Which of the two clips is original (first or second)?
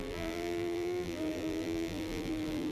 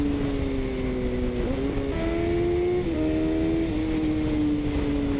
second